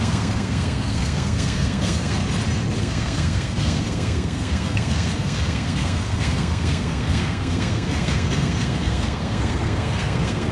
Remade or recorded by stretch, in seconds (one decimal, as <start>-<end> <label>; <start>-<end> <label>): 0.0-2.2 remade; 2.2-2.8 recorded; 2.8-10.5 remade